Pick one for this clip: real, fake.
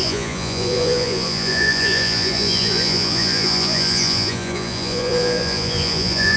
fake